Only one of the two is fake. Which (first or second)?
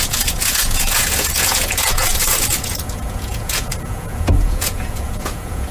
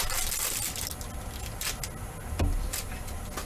first